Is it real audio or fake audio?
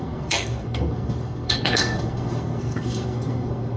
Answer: fake